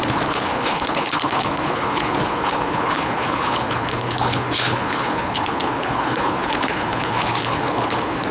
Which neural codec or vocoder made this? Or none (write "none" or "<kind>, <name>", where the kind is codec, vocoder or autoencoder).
codec, HILCodec